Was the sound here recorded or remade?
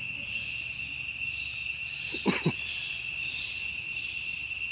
recorded